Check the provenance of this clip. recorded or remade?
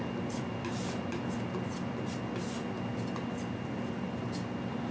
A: recorded